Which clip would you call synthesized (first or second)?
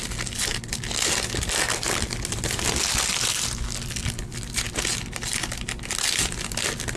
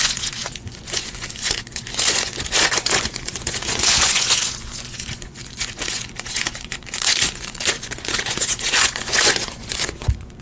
second